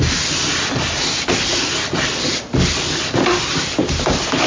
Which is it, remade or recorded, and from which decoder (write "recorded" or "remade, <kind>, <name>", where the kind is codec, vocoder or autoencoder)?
recorded